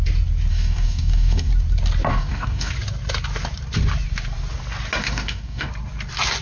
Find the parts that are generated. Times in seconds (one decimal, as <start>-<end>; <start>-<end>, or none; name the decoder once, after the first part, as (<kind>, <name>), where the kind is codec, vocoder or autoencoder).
0.5-1.5 (codec, DAC); 2.1-2.7; 5.0-5.7